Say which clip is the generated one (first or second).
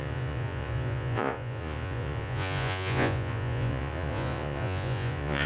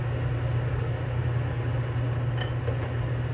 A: first